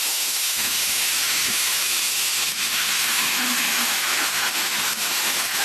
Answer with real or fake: fake